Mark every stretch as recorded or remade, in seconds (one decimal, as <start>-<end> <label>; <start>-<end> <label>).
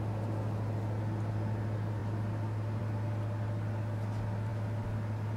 0.0-5.4 recorded